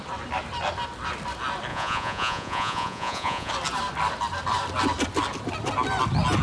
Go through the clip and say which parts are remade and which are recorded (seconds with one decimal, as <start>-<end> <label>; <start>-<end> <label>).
0.0-1.7 recorded; 1.7-3.5 remade; 3.5-6.4 recorded